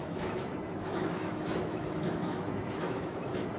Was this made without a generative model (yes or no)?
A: no